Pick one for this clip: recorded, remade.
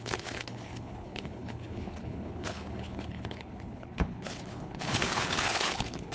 remade